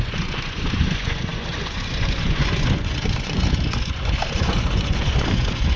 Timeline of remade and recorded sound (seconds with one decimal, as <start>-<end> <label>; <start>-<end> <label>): 0.0-5.8 remade